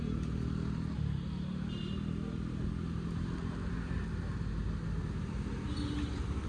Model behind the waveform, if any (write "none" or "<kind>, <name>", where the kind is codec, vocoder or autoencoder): none